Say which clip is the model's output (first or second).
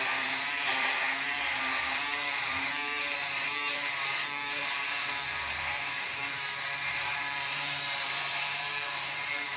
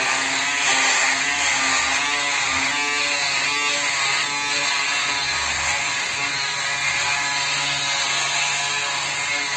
first